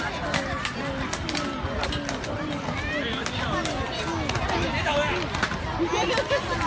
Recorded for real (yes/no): yes